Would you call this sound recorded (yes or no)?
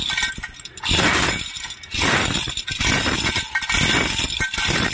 yes